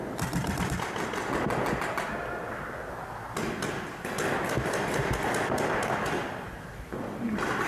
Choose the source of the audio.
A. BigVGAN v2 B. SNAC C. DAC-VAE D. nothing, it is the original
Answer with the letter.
D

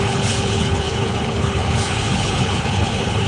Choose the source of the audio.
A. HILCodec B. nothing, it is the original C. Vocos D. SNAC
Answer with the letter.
A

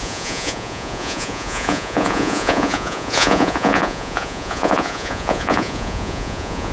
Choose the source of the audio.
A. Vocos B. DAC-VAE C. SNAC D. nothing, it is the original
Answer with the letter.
A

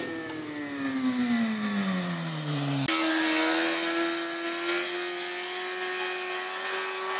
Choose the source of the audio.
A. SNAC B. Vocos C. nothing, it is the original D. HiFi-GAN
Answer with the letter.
C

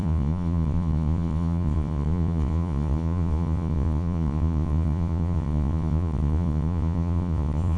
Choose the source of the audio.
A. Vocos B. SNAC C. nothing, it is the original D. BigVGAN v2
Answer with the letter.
A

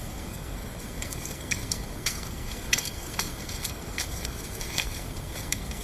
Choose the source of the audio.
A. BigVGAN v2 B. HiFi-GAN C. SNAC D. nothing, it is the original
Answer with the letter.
C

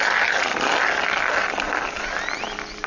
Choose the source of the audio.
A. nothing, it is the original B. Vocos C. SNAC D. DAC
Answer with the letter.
A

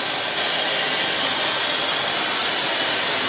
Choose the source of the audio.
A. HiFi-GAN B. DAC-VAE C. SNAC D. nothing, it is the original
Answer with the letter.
D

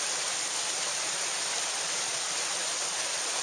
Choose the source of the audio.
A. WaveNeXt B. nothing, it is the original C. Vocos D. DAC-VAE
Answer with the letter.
B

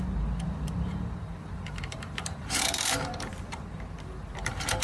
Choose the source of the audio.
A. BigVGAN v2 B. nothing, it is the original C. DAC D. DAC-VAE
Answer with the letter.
A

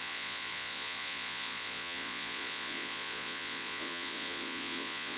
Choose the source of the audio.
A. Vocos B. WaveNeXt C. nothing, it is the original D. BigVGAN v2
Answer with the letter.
A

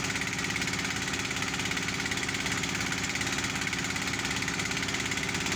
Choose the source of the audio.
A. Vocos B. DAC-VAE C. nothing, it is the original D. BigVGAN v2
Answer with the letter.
C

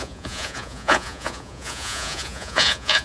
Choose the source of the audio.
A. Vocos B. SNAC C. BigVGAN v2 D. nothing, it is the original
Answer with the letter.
A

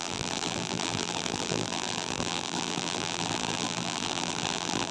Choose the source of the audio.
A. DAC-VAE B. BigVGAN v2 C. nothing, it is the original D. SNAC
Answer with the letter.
B